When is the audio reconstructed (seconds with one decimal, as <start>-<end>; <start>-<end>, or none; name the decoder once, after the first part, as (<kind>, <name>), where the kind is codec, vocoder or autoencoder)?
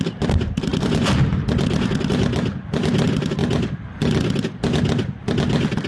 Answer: none